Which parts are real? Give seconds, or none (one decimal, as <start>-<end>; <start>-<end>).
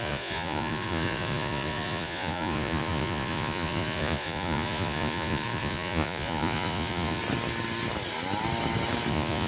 7.2-9.1